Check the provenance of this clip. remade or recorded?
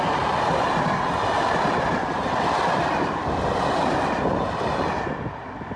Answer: recorded